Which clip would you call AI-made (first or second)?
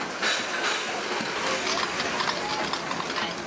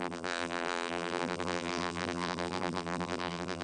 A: second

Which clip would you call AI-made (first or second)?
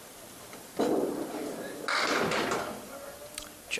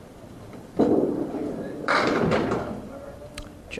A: second